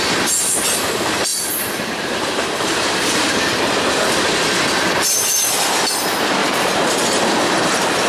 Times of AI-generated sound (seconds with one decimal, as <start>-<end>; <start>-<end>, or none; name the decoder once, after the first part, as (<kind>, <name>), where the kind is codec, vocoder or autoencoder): 1.3-3.1 (vocoder, BigVGAN v2); 6.4-8.1